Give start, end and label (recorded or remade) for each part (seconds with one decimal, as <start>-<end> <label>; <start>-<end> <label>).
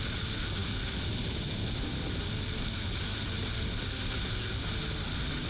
0.0-5.5 recorded